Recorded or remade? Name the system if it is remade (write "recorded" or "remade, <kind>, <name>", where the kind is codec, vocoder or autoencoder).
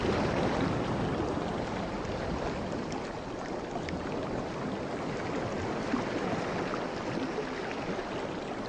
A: recorded